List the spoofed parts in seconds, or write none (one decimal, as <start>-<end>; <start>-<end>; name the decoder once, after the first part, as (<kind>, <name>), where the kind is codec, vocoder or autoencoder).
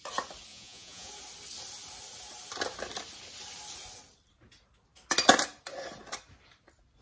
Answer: 0.5-1.1 (vocoder, Vocos)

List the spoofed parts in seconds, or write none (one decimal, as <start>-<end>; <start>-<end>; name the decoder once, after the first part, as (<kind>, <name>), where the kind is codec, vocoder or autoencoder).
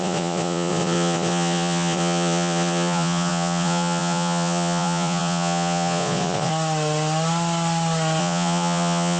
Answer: 0.0-6.5 (vocoder, Vocos); 8.2-9.2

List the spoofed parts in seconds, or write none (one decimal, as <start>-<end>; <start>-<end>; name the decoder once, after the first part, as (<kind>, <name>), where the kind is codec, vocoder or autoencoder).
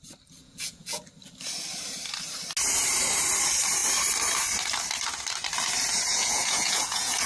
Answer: 0.4-1.0 (vocoder, Vocos); 6.1-7.3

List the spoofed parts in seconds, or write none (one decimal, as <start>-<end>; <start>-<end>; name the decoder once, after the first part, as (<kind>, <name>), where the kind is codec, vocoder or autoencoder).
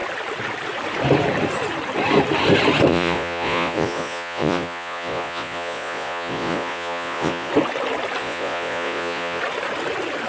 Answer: 2.9-7.5 (vocoder, Vocos); 8.2-9.4